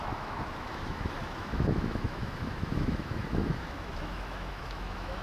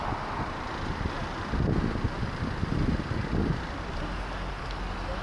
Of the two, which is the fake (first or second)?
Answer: first